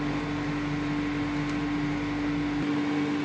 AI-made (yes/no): no